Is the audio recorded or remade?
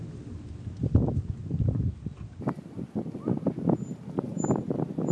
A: recorded